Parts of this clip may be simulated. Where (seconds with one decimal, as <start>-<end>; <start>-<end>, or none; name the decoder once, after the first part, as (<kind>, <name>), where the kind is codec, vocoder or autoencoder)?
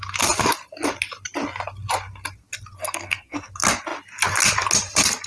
2.8-3.5 (codec, SNAC)